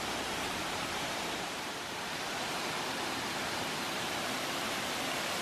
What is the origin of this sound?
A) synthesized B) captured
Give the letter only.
A